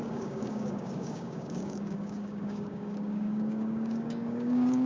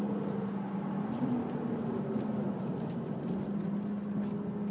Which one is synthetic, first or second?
first